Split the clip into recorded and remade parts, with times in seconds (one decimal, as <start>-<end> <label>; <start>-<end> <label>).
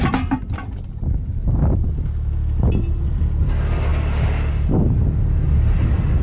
0.0-1.3 recorded; 1.3-1.9 remade; 1.9-6.2 recorded